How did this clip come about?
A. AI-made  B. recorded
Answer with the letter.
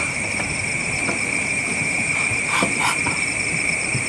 A